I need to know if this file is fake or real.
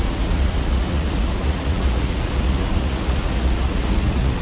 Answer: fake